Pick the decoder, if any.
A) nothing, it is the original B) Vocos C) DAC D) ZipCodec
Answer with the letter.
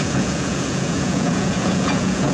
B